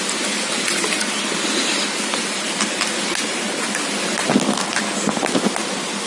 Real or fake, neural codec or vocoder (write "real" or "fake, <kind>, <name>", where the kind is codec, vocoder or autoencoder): real